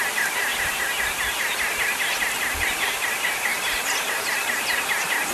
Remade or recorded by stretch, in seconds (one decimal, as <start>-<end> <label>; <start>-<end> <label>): 0.0-3.5 remade; 3.5-4.1 recorded; 4.1-5.3 remade